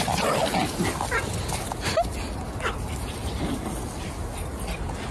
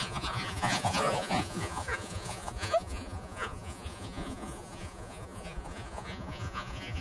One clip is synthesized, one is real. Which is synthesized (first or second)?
second